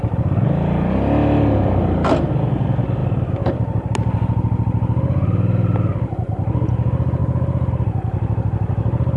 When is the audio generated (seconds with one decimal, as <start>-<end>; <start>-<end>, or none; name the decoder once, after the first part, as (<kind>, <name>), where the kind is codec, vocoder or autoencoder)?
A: 7.2-7.7 (vocoder, BigVGAN v2)